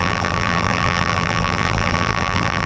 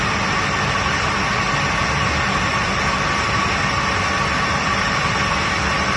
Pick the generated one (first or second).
first